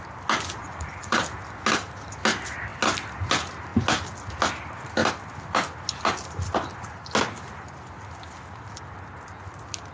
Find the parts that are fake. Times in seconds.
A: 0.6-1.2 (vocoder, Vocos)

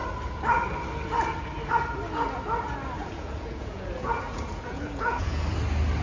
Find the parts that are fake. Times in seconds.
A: 3.0-5.5 (vocoder, Vocos)

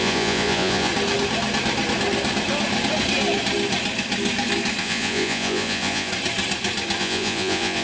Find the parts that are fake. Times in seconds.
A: 0.0-0.9 (vocoder, Vocos); 4.8-6.1; 7.0-7.8

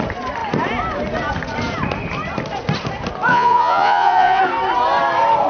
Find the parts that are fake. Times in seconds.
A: 3.3-4.4 (vocoder, Vocos)

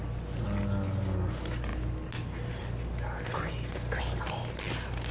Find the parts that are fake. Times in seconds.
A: none

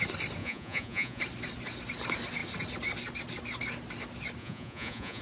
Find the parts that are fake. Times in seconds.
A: 0.4-1.2 (vocoder, Vocos); 4.4-5.2

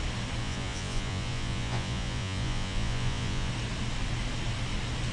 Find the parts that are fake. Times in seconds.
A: 0.4-3.5 (vocoder, Vocos)

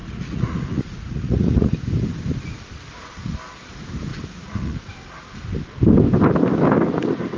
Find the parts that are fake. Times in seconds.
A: 0.0-1.7 (vocoder, Vocos); 4.1-4.9